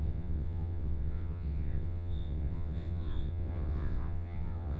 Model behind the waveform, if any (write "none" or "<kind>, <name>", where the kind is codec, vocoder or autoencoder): vocoder, WaveNeXt